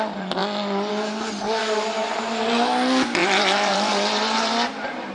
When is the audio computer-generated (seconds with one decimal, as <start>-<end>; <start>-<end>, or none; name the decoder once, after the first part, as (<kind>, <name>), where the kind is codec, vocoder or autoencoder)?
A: 1.6-2.2 (vocoder, BigVGAN v2); 3.2-5.1